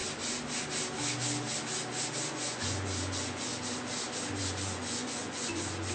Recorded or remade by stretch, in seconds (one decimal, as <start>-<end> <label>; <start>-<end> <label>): 0.0-2.3 recorded; 2.3-3.5 remade; 3.5-4.4 recorded; 4.4-5.9 remade